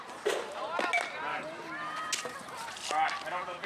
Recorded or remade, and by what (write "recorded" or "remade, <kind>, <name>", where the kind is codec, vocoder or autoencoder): recorded